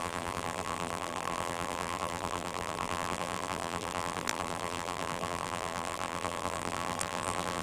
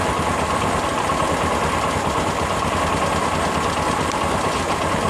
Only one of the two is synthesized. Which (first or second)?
first